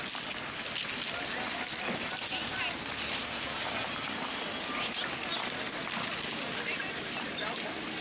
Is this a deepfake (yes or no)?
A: no